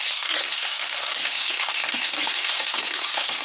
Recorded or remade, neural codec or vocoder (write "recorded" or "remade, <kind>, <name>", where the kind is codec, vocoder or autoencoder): remade, codec, SNAC